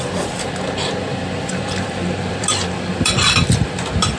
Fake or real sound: fake